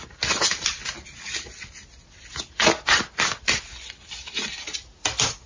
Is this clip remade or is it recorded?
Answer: recorded